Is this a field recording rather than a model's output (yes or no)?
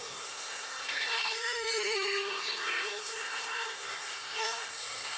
no